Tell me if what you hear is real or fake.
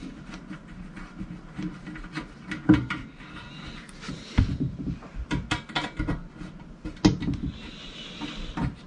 real